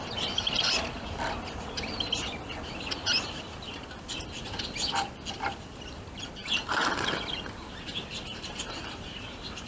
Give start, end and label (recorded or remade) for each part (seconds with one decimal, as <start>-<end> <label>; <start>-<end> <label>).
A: 0.0-6.4 recorded; 6.4-7.2 remade; 7.2-8.3 recorded; 8.3-8.8 remade; 8.8-9.7 recorded